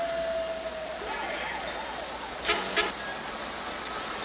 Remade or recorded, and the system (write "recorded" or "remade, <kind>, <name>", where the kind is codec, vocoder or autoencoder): recorded